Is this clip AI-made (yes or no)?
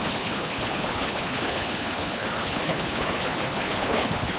yes